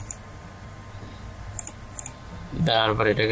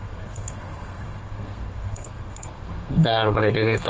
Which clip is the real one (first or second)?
first